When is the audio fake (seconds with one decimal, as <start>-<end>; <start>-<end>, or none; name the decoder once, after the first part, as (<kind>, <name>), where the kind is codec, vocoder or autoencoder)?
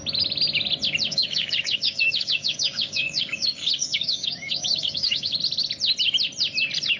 1.1-5.3 (codec, DAC)